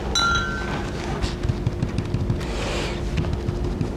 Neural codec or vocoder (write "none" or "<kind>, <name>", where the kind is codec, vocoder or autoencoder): none